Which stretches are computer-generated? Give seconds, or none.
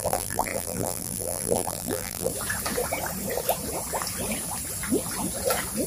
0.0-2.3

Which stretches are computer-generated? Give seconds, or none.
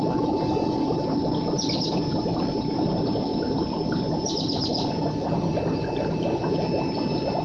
1.9-2.6